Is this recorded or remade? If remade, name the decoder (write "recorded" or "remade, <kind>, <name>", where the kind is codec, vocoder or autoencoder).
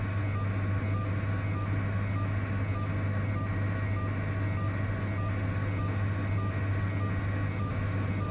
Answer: recorded